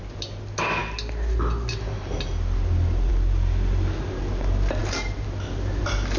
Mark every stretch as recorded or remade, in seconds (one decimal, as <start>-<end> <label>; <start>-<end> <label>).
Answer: 0.0-6.2 recorded